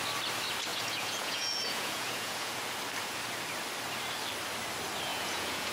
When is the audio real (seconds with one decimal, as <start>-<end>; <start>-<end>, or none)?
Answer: 0.0-0.7; 2.6-5.1